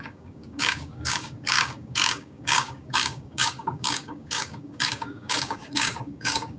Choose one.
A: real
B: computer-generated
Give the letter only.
B